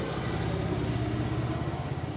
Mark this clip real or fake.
real